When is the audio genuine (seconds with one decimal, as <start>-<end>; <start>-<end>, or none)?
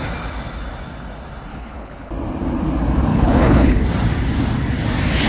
0.0-1.5; 2.1-3.1; 3.8-5.3